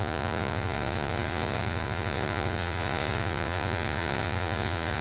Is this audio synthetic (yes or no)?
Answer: yes